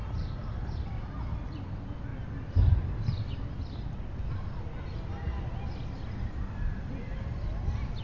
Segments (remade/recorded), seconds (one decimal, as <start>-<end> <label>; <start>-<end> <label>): 0.0-8.0 recorded